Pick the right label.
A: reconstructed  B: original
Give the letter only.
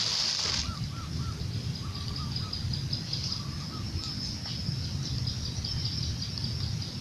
B